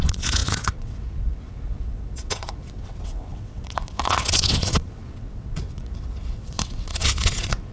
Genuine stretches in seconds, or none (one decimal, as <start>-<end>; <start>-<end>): none